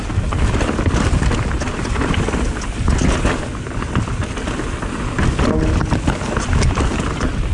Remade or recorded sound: recorded